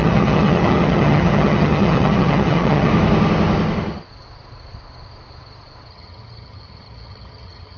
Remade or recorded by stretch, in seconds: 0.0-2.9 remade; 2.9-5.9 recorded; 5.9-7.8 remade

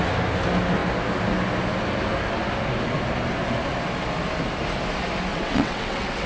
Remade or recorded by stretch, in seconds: 0.0-5.3 recorded; 5.3-6.3 remade

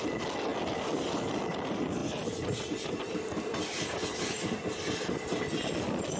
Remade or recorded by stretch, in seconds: 0.0-6.2 recorded

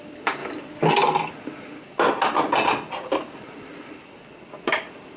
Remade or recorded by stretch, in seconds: 0.0-5.2 recorded

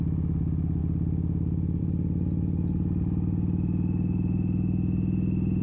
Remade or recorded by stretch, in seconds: 0.0-5.6 recorded

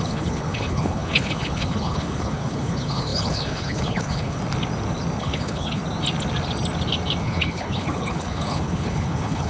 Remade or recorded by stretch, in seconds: 0.0-4.4 remade; 4.4-5.2 recorded; 5.2-5.8 remade; 5.8-7.2 recorded; 7.2-9.5 remade

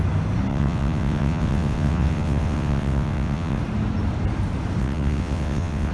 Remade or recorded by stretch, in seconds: 0.0-0.5 recorded; 0.5-3.6 remade; 3.6-4.8 recorded; 4.8-5.9 remade